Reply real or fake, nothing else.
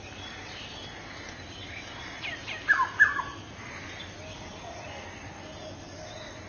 real